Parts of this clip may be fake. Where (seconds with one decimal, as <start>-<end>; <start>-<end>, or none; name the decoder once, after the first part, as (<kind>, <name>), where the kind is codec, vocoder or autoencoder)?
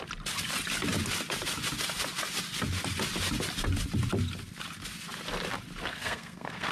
5.9-6.7 (codec, SNAC)